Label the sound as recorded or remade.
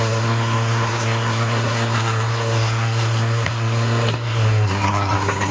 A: remade